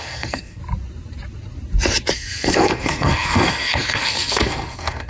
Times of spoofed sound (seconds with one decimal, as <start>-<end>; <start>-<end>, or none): 0.0-0.6; 2.1-5.1